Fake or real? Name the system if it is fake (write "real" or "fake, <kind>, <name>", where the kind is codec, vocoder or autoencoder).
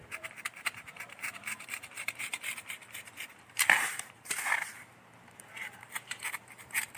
fake, vocoder, BigVGAN v2